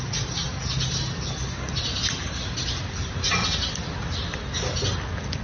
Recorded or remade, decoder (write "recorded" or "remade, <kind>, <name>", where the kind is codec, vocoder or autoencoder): recorded